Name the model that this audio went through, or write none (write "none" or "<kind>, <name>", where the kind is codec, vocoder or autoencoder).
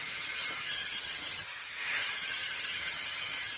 vocoder, HiFi-GAN